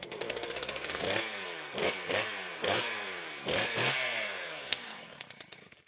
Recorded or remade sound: remade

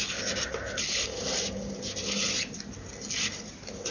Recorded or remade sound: recorded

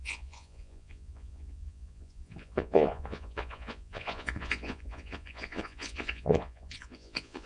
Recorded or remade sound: remade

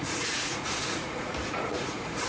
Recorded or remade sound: remade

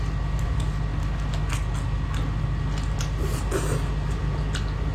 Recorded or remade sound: recorded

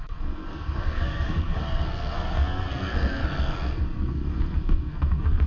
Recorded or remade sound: remade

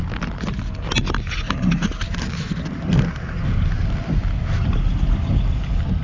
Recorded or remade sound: recorded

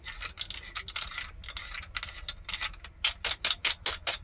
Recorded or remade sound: recorded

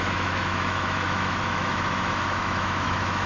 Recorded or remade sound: remade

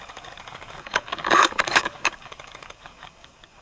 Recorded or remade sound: remade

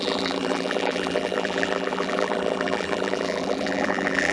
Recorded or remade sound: remade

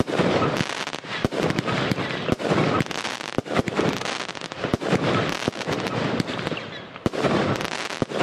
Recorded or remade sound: recorded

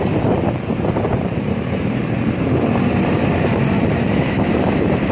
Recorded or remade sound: remade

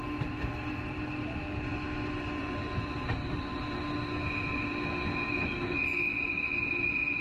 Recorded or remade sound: recorded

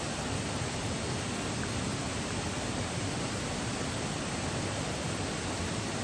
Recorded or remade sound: recorded